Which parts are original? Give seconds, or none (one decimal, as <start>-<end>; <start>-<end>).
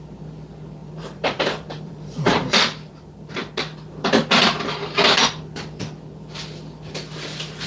0.0-0.8; 2.6-7.7